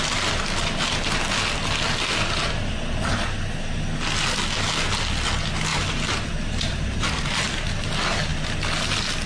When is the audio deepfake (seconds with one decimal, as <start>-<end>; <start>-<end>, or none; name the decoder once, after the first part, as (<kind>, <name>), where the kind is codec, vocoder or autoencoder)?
5.7-7.7 (vocoder, BigVGAN v2)